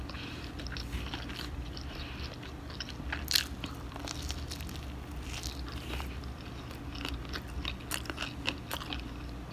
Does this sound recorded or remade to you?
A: recorded